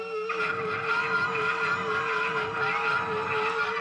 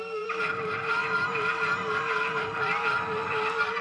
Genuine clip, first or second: first